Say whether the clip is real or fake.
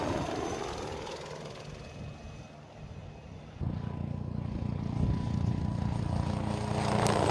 real